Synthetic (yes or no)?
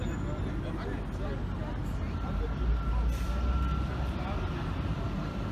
no